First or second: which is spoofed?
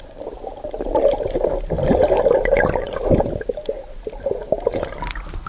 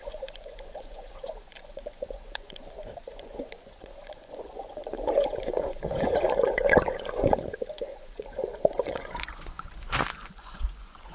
second